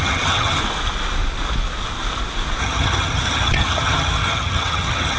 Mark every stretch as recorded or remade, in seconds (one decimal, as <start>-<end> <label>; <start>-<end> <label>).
0.0-0.6 remade; 0.6-2.6 recorded; 2.6-5.2 remade